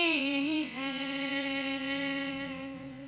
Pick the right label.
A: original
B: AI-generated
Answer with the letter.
B